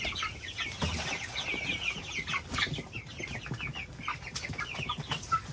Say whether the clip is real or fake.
real